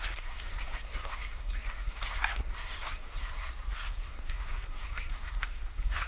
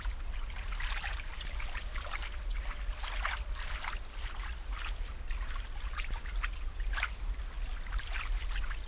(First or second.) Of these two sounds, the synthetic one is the first